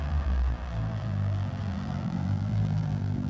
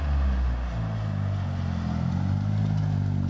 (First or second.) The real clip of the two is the second